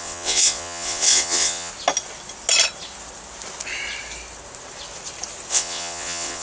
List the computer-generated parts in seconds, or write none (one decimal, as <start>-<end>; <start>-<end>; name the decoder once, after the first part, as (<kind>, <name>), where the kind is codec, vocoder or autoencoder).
0.0-1.7 (vocoder, WaveNeXt); 5.5-6.4